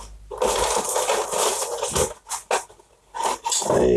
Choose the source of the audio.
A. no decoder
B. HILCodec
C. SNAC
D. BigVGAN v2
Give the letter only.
A